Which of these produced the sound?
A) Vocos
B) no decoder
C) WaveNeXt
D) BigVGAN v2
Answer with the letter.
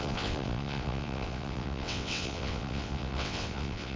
C